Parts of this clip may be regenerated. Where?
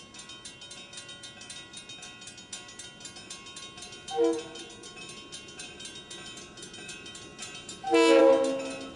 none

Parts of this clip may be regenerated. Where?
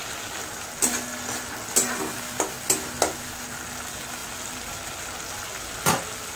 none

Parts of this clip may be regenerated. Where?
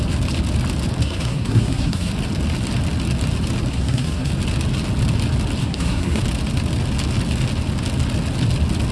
1.0-2.1 (codec, SNAC); 3.7-4.3; 5.6-6.2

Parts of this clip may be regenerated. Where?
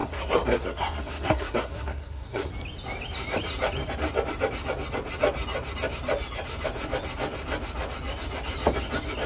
0.0-2.5 (codec, SNAC)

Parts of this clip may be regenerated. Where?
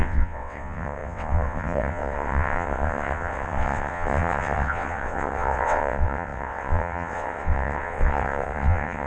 0.0-9.1 (vocoder, WaveNeXt)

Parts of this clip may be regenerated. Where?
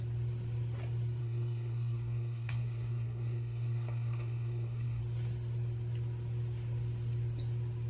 1.2-5.0 (codec, SNAC)